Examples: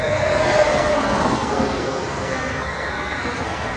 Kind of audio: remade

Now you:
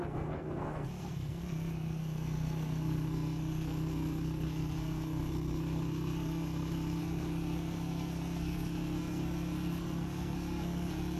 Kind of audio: remade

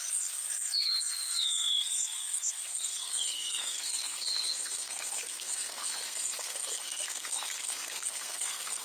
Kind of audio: remade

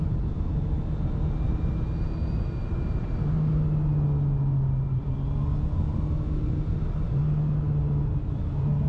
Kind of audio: recorded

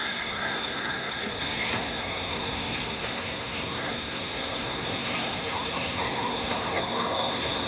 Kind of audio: remade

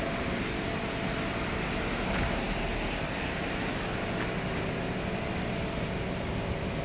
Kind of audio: recorded